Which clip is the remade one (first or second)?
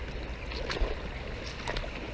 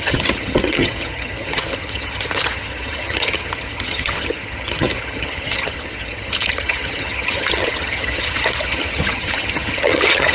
second